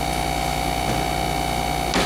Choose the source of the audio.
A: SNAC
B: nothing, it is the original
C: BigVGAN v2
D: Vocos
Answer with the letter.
B